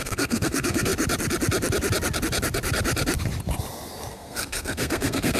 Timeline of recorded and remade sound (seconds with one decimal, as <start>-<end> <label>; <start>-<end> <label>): 0.0-0.9 remade; 0.9-4.1 recorded; 4.1-5.4 remade

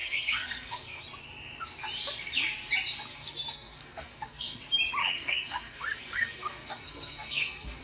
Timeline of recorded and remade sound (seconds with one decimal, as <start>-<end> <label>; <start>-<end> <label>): 0.0-1.0 remade; 1.0-3.1 recorded; 3.1-4.6 remade; 4.6-5.0 recorded; 5.0-7.8 remade

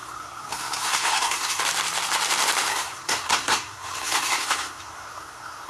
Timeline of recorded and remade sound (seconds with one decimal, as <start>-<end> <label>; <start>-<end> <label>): 0.0-1.6 remade; 1.6-2.7 recorded; 2.7-5.7 remade

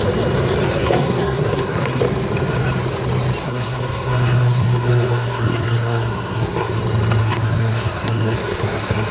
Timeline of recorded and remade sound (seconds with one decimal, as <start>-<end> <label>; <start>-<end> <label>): 0.0-0.7 recorded; 0.7-2.0 remade; 2.0-3.4 recorded; 3.4-6.8 remade; 6.8-7.2 recorded; 7.2-9.1 remade

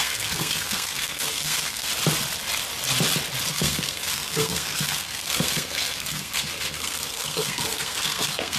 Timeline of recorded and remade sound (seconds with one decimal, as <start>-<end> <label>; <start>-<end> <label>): 0.0-1.9 remade; 1.9-3.5 recorded; 3.5-8.6 remade

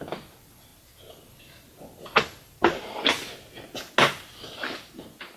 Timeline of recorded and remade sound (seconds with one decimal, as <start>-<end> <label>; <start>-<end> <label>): 0.0-5.4 recorded

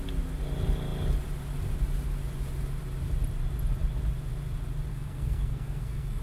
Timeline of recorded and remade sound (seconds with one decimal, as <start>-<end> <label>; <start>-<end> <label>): 0.0-4.9 recorded; 4.9-6.2 remade

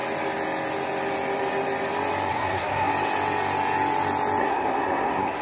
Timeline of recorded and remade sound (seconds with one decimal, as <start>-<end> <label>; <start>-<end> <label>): 0.0-2.3 recorded; 2.3-2.9 remade; 2.9-4.4 recorded; 4.4-5.4 remade